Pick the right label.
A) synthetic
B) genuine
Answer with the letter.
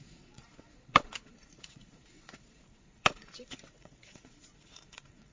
A